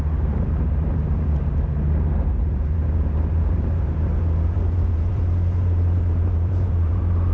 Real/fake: fake